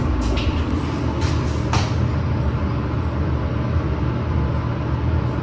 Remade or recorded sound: recorded